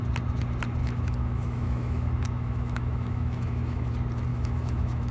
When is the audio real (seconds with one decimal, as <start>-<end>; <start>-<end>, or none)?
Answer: 0.0-0.8; 3.9-4.3